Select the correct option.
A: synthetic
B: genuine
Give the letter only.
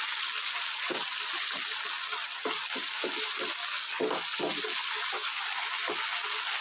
B